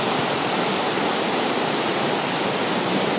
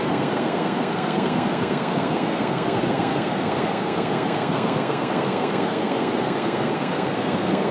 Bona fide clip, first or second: first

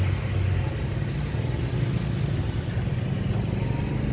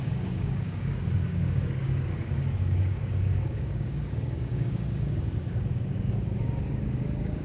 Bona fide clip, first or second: first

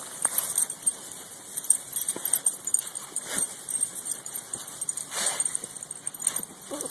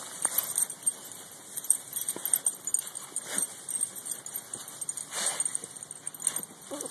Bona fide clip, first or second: second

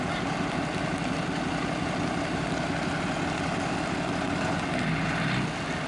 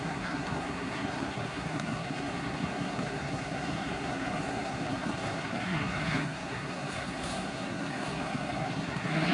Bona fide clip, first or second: first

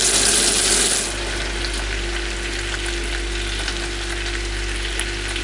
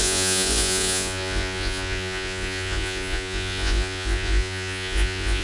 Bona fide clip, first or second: first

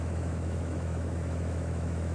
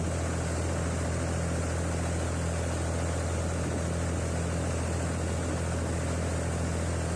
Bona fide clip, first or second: second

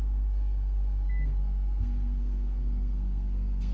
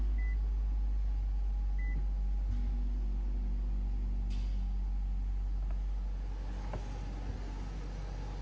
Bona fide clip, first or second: second